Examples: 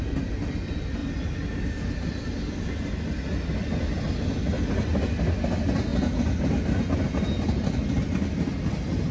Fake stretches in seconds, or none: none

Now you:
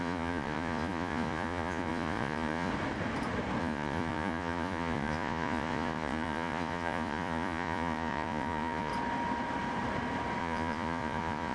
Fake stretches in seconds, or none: 0.0-2.7 (vocoder, Vocos); 3.6-8.9; 10.4-11.5

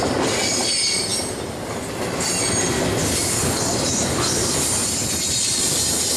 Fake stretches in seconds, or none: none

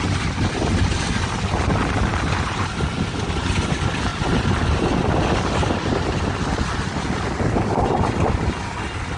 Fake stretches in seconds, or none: 2.1-3.2 (vocoder, BigVGAN v2)

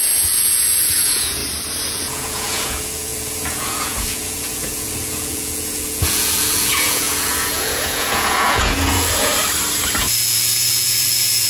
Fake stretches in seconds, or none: 0.0-1.4 (vocoder, Vocos); 1.9-9.3; 10.0-11.5